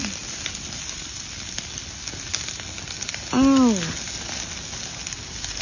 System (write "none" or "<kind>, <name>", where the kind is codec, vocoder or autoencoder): none